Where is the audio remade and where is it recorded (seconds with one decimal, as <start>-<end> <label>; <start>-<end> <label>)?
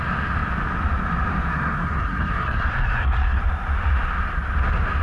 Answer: 0.0-1.5 recorded; 1.5-3.4 remade; 3.4-5.0 recorded